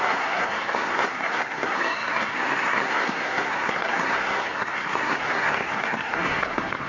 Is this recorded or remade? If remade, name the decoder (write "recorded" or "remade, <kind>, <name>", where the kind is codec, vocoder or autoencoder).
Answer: remade, codec, SNAC